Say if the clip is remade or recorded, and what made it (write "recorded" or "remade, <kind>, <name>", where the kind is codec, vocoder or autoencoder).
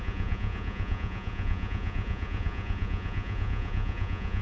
remade, vocoder, Vocos